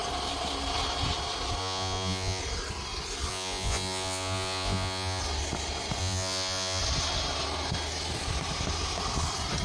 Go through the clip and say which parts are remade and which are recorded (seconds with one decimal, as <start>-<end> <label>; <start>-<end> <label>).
0.0-1.6 recorded; 1.6-2.4 remade; 2.4-3.3 recorded; 3.3-5.2 remade; 5.2-6.0 recorded; 6.0-6.8 remade; 6.8-9.6 recorded